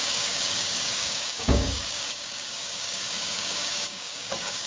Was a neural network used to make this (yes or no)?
yes